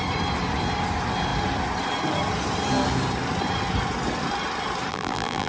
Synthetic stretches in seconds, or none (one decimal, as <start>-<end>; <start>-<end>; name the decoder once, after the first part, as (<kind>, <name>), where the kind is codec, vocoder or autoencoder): 4.9-5.5 (vocoder, BigVGAN v2)